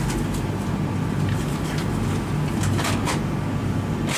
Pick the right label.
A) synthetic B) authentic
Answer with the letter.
B